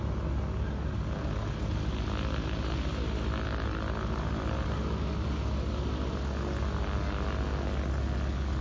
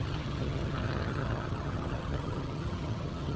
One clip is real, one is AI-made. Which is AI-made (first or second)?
second